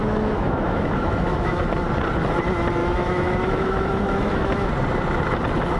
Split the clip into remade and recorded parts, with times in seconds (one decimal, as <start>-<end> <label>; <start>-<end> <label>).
0.0-1.6 remade; 1.6-2.8 recorded; 2.8-4.7 remade; 4.7-5.8 recorded